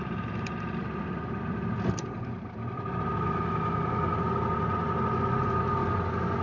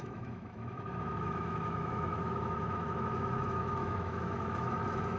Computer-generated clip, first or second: second